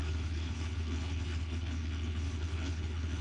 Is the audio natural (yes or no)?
no